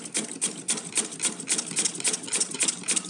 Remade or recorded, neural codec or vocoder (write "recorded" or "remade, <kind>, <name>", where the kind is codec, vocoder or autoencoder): recorded